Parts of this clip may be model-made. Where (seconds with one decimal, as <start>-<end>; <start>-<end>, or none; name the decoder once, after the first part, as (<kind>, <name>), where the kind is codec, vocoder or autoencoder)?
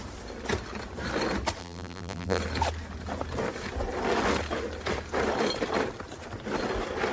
1.6-2.4 (vocoder, BigVGAN v2)